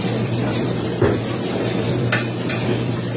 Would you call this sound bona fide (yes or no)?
no